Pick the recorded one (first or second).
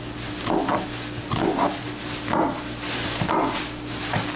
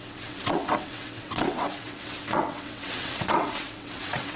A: first